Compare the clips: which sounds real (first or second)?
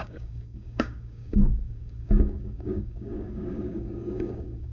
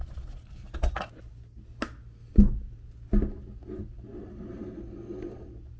second